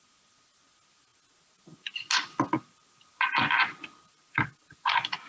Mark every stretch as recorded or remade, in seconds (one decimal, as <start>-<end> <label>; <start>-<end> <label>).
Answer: 0.0-5.3 recorded